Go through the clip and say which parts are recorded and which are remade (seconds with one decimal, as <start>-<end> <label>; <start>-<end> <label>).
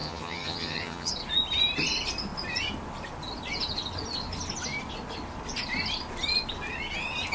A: 0.0-1.1 remade; 1.1-7.3 recorded